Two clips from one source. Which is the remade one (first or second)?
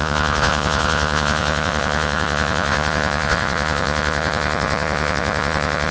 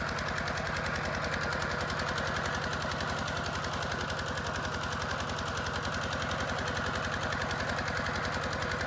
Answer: first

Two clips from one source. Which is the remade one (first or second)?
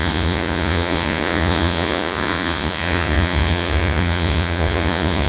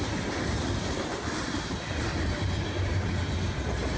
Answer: first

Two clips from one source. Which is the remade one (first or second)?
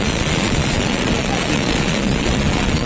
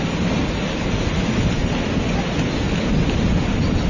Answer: first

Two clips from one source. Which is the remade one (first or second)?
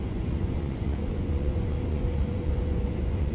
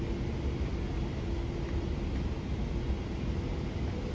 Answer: first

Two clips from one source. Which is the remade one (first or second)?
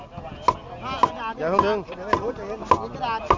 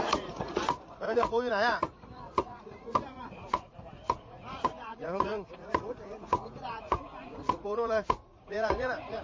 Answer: second